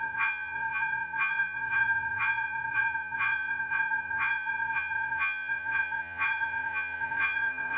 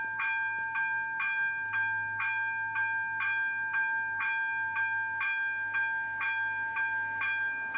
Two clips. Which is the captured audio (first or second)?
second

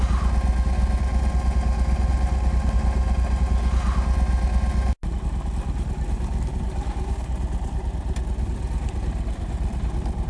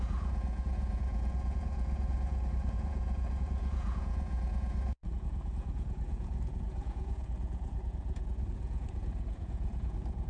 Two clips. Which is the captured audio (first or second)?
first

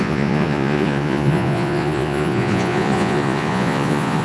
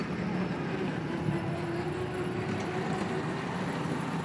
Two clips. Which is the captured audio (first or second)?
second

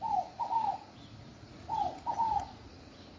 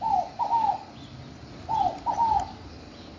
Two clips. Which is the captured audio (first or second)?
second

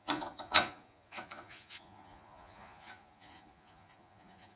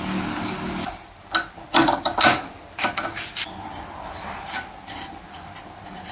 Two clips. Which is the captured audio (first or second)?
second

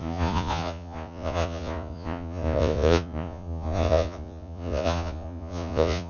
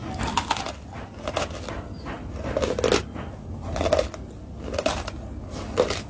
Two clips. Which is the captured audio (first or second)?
second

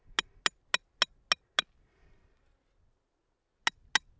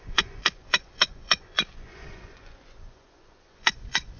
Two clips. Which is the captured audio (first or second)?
first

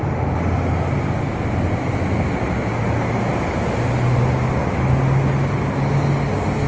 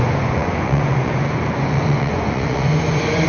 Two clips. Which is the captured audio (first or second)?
first